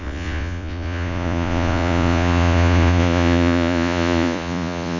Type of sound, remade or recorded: remade